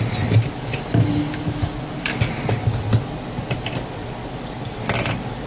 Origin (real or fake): real